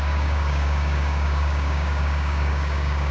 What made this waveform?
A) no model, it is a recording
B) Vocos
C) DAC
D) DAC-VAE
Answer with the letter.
C